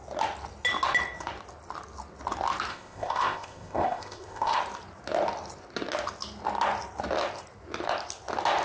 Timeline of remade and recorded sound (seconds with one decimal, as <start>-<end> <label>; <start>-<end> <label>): 0.0-2.7 recorded; 2.7-4.6 remade; 4.6-8.6 recorded